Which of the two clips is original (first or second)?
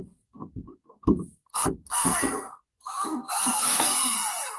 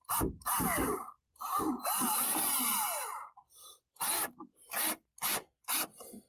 second